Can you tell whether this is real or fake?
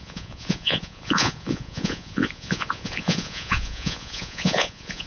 fake